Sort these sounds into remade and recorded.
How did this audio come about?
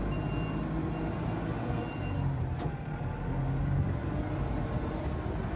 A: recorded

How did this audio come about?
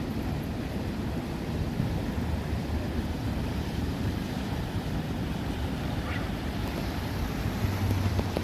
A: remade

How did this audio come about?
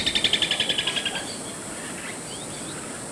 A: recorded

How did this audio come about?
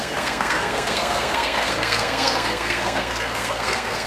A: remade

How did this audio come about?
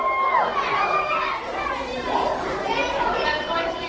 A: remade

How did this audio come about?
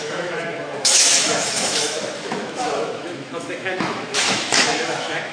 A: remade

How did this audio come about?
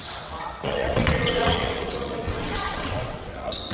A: remade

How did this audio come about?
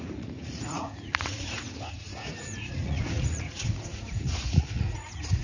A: remade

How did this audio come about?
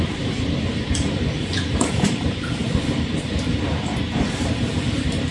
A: remade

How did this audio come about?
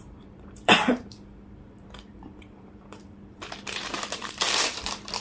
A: remade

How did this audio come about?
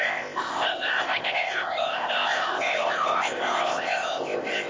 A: remade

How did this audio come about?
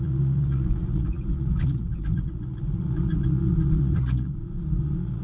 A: remade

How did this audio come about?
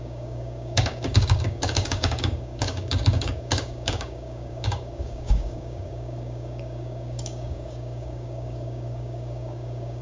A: remade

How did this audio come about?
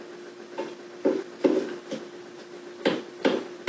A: recorded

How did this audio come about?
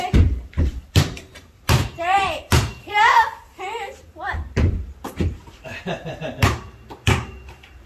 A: remade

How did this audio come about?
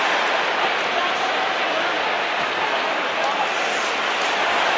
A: recorded